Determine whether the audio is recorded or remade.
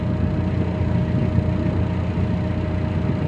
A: recorded